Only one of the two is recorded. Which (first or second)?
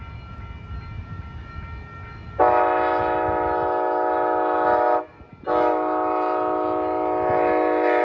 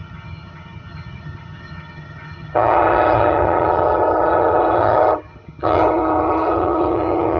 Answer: first